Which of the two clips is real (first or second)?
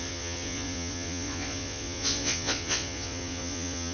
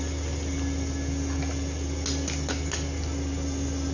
second